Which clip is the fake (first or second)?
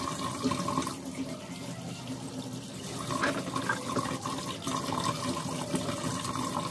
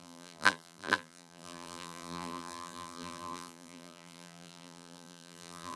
second